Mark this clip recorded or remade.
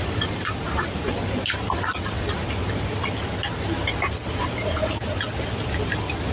recorded